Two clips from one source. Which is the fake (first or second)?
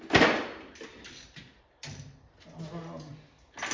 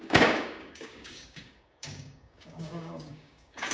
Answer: second